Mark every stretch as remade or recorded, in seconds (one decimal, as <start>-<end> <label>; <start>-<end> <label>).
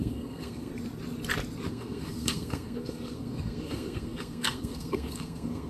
0.0-0.7 remade; 0.7-1.7 recorded; 1.7-5.7 remade